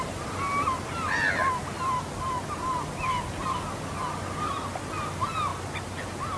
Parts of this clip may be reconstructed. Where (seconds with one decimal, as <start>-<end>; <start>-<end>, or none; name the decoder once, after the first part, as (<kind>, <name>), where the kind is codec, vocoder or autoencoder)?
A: none